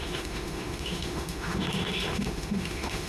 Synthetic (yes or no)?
yes